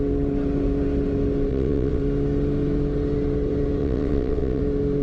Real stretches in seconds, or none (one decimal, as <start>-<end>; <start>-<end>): 0.0-1.5; 2.0-3.8; 4.6-5.0